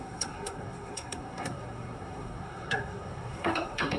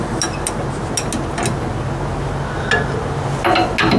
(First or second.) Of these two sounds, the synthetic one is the first